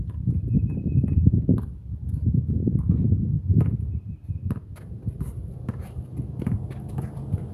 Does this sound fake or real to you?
real